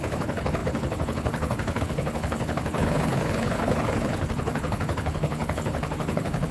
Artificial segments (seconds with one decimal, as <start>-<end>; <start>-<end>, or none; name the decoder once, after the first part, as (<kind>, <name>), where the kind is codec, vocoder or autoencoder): 0.0-6.5 (codec, HILCodec)